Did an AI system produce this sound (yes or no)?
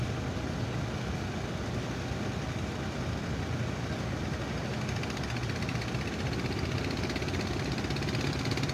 no